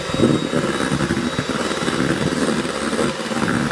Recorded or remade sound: recorded